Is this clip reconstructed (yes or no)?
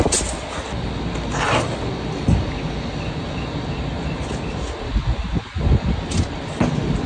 no